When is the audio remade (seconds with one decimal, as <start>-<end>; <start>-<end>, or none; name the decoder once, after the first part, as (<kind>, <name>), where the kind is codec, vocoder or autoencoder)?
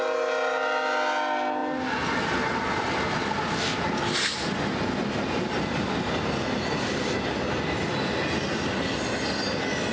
none